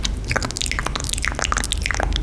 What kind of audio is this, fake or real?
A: real